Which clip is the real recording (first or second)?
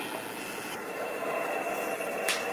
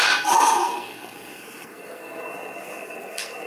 first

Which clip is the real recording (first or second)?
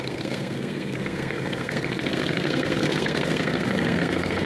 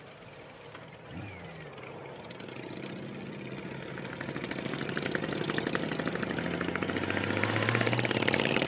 second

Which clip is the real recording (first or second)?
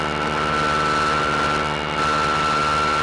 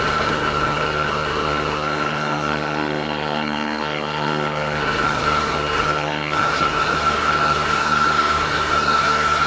first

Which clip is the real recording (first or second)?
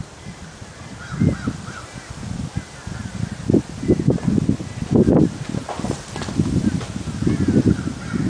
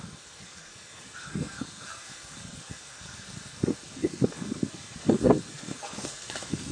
first